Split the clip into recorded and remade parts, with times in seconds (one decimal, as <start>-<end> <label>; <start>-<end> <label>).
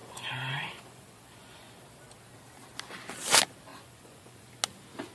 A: 0.0-1.7 remade; 1.7-3.7 recorded; 3.7-4.5 remade; 4.5-5.1 recorded